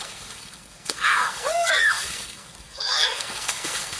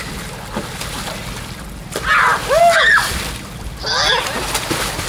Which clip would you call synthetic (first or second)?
first